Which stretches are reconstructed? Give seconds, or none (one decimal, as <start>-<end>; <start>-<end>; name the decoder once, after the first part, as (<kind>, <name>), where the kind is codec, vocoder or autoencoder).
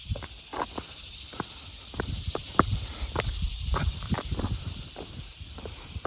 2.0-6.1 (vocoder, BigVGAN v2)